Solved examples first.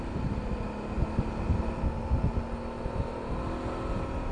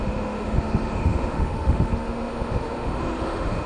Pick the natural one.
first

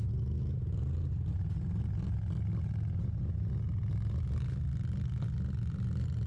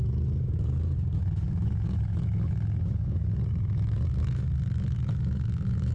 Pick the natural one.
first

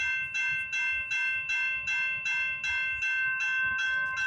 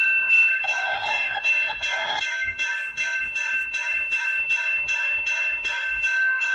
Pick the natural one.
first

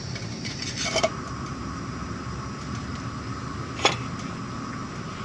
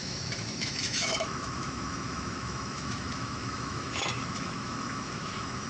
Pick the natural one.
first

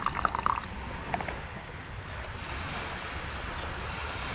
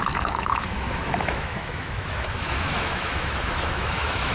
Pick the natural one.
first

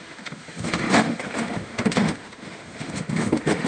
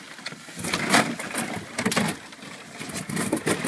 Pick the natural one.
second